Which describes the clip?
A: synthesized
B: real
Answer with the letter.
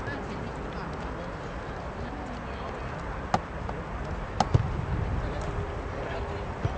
B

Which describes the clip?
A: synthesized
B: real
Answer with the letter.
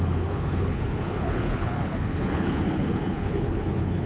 A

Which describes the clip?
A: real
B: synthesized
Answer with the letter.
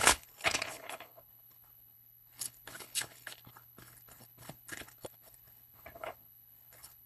B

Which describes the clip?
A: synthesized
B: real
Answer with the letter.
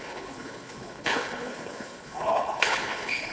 A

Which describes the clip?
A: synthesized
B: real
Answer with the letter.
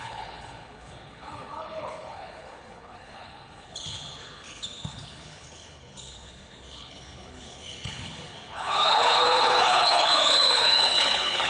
A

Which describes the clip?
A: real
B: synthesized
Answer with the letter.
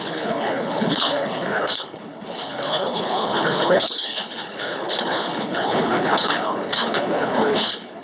B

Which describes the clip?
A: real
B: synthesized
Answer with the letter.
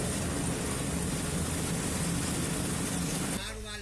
A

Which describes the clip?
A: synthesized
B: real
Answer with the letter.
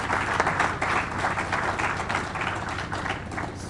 B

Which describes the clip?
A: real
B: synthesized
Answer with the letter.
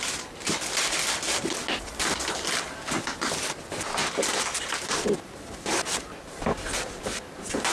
A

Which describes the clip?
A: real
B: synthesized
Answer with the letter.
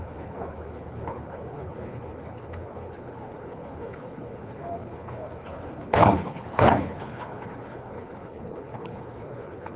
B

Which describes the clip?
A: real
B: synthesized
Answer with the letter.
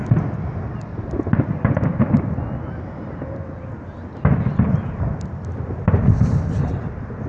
A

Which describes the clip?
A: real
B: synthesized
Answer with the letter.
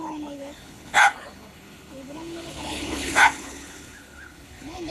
B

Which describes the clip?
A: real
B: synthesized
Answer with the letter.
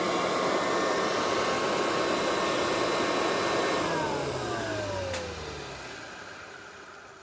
A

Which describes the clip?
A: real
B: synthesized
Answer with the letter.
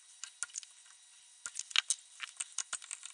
A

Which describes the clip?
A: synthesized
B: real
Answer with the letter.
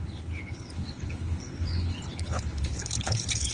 A